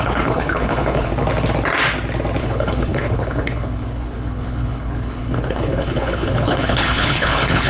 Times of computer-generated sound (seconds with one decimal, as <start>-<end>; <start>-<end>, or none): 0.0-1.1; 2.4-7.7